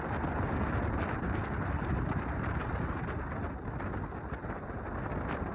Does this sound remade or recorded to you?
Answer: recorded